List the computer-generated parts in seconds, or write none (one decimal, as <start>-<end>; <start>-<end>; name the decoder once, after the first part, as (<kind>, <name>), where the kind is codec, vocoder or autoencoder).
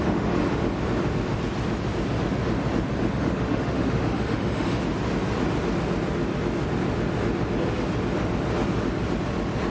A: 0.0-0.4 (autoencoder, DAC-VAE); 3.1-4.9